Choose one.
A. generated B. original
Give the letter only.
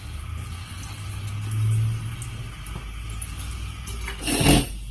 B